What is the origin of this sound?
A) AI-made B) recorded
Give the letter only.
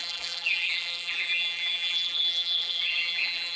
A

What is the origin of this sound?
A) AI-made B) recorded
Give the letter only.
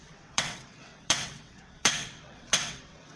A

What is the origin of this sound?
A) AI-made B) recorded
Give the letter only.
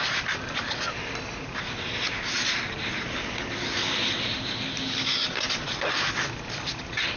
B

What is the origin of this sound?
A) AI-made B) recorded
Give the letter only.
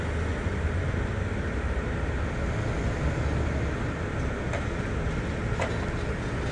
B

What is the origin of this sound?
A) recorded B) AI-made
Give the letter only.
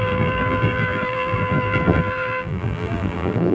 B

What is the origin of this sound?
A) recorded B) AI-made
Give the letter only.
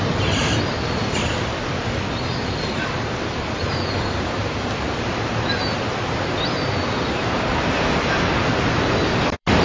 B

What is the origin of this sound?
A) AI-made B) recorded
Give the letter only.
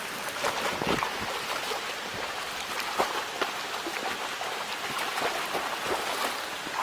B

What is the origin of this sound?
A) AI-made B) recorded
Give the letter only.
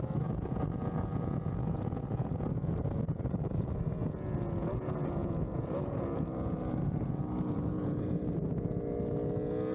A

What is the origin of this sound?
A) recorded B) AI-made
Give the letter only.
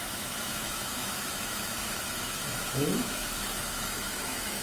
B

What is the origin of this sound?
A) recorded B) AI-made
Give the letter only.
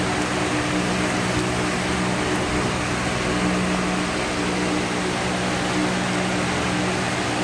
A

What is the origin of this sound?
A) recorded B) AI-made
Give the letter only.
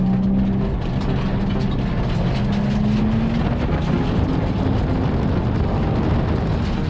A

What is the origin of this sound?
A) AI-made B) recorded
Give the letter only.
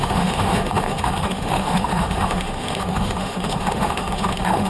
A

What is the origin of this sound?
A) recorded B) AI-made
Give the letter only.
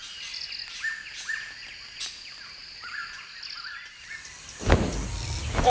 A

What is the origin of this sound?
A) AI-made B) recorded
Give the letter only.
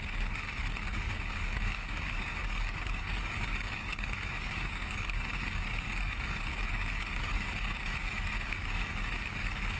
A